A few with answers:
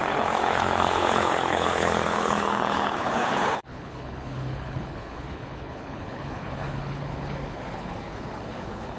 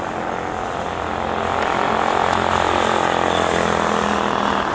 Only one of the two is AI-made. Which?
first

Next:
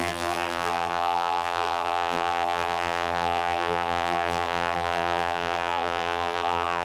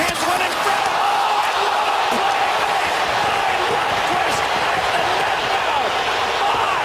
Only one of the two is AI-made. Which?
first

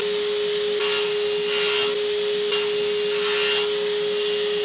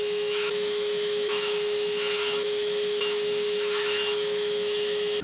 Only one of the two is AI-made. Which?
second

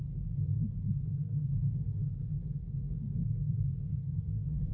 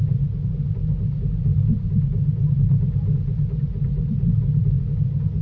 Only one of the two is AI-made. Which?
first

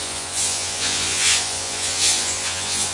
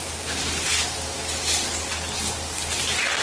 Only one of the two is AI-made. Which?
first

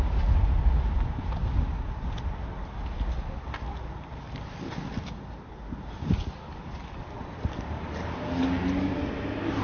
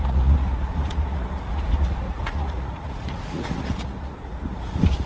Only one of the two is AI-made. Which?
second